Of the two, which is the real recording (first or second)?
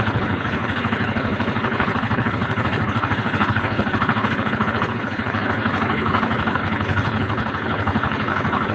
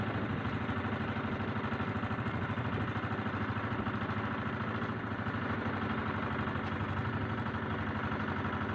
second